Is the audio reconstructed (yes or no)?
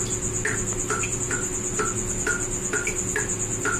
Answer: no